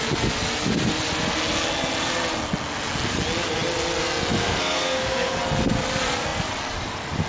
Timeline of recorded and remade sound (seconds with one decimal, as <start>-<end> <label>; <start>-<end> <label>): 0.0-4.4 recorded; 4.4-5.4 remade; 5.4-7.3 recorded